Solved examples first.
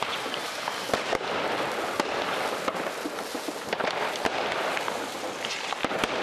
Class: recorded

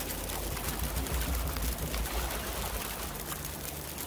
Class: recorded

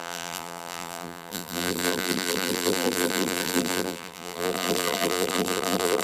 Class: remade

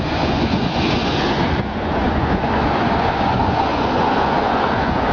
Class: remade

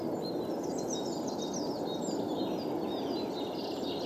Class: recorded